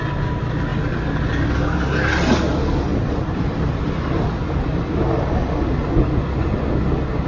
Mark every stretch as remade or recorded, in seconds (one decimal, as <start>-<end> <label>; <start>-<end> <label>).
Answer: 0.0-2.9 recorded; 2.9-4.8 remade; 4.8-5.8 recorded; 5.8-6.5 remade; 6.5-7.3 recorded